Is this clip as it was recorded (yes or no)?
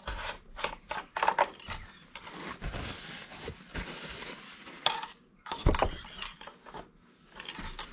yes